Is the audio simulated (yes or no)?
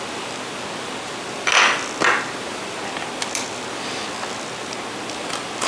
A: no